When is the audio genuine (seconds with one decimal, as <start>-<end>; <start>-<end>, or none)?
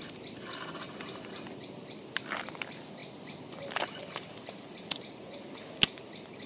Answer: 0.0-6.5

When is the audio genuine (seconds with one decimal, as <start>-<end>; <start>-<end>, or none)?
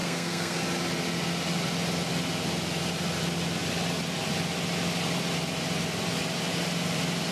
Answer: 0.6-7.3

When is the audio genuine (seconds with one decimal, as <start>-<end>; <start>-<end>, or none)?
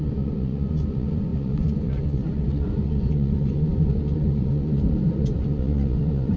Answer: none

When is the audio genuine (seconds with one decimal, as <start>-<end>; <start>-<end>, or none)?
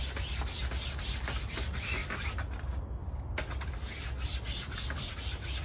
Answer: 0.0-5.6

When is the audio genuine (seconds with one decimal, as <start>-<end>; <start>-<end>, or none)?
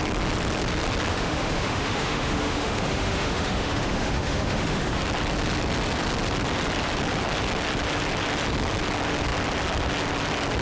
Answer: 0.0-1.1; 5.0-10.6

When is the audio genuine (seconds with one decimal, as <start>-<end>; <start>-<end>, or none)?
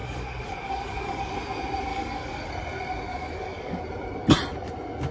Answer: 1.3-1.9; 2.5-3.1; 3.8-5.1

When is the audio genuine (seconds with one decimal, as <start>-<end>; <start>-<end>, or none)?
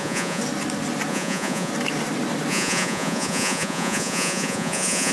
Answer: 0.4-1.1; 1.7-2.5